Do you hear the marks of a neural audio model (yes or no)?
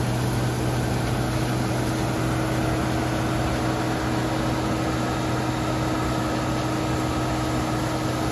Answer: no